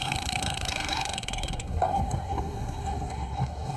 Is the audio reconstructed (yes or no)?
yes